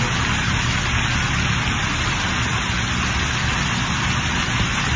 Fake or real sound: real